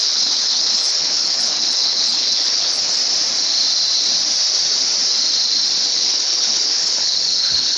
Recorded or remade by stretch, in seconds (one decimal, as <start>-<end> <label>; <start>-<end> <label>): 0.0-2.9 remade; 2.9-5.9 recorded; 5.9-7.8 remade